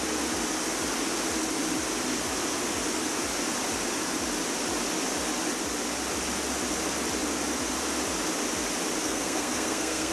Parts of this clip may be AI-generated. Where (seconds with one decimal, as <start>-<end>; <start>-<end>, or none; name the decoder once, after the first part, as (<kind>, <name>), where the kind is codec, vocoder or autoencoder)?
9.0-10.1 (codec, SNAC)